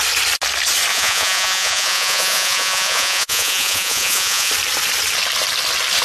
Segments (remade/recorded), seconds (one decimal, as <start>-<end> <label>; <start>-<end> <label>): 0.0-0.9 recorded; 0.9-4.5 remade; 4.5-6.0 recorded